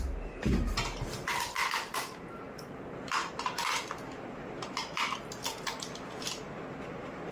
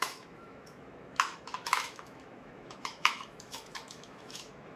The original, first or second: first